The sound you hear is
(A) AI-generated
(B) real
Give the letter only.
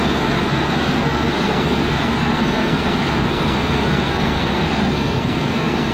A